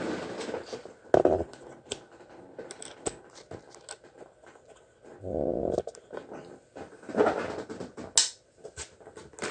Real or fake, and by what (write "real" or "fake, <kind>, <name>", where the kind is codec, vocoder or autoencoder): real